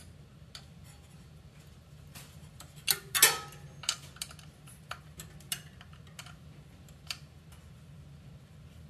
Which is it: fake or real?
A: real